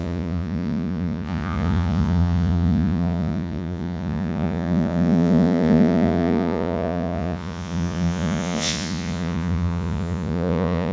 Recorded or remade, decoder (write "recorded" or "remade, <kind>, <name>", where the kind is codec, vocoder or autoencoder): remade, vocoder, Vocos